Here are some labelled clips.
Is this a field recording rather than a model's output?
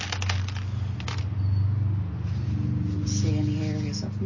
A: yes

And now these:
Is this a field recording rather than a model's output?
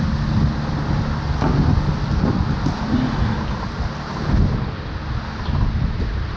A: yes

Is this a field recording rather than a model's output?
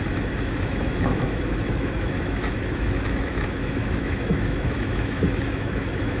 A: no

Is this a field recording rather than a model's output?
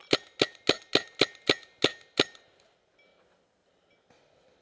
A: yes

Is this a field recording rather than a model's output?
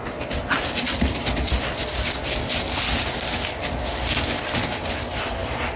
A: yes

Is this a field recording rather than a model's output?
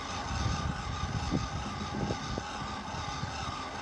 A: yes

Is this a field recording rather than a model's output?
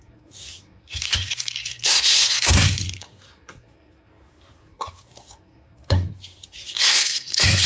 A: no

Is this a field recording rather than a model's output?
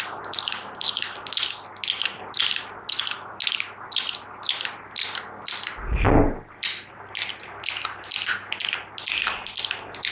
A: yes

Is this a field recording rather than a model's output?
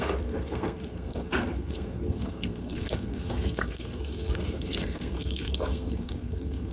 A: no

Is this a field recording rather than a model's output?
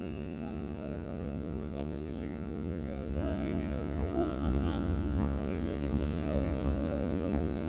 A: no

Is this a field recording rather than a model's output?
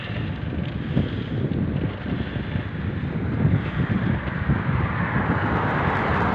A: yes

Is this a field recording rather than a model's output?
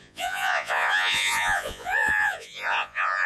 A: no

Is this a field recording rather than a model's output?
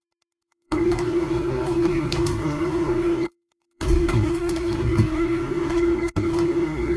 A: no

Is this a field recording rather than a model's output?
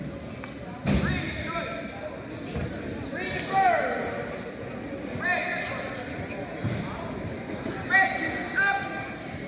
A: yes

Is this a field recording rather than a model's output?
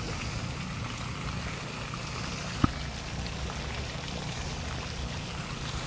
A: yes